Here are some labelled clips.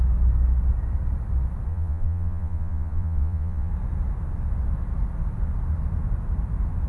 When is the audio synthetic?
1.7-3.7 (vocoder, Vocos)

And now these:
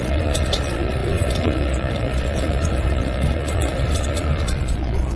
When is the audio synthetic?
0.0-5.2 (vocoder, Vocos)

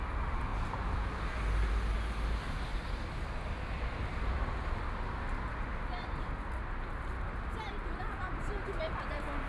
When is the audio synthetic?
none

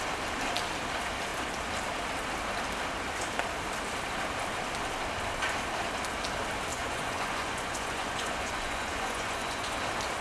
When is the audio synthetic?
6.7-9.7 (vocoder, Vocos)

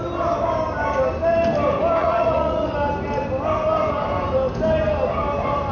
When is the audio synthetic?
2.0-2.7 (vocoder, Vocos)

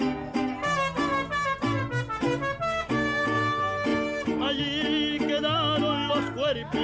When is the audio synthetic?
none